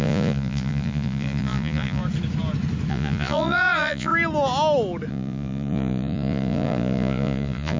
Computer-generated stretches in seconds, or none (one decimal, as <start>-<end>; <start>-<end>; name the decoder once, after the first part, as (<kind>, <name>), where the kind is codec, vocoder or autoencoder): 0.0-2.0 (vocoder, Vocos); 2.9-4.1; 5.1-7.8